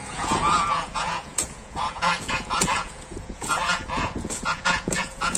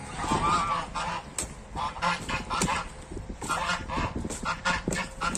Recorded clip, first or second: second